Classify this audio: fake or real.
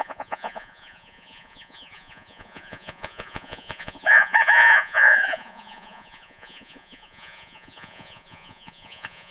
fake